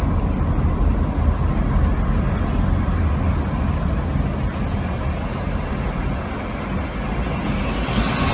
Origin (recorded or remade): recorded